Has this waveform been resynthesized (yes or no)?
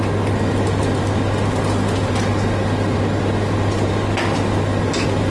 no